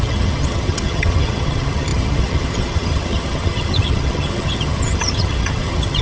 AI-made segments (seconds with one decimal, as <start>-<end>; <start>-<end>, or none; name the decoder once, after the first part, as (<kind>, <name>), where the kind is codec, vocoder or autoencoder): 0.0-6.0 (vocoder, HiFi-GAN)